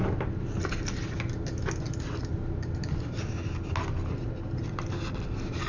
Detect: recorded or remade recorded